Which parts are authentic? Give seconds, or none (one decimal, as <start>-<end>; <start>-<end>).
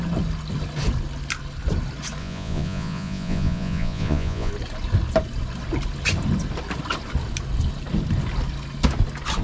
0.0-2.2; 4.5-9.4